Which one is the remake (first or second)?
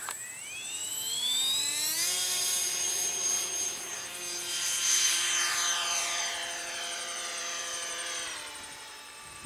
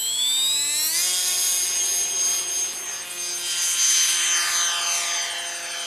first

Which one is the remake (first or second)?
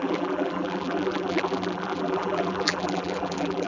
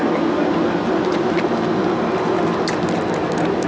first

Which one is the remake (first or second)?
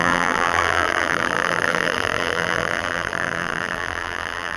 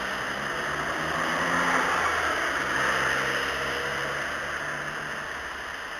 first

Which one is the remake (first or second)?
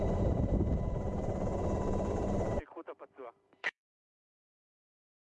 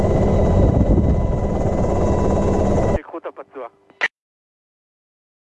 first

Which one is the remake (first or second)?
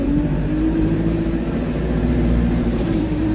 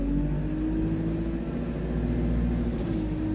first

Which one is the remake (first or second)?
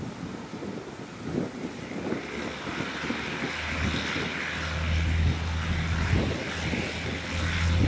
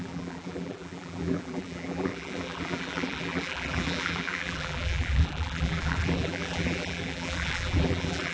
second